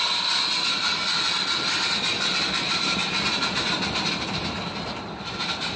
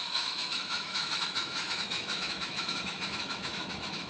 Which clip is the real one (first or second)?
first